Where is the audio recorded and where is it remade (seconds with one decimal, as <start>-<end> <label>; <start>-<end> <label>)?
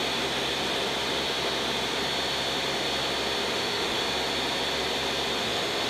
0.0-3.5 recorded; 3.5-4.0 remade; 4.0-5.4 recorded; 5.4-5.9 remade